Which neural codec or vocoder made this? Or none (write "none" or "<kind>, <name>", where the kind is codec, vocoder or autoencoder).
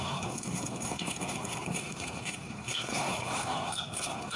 codec, SNAC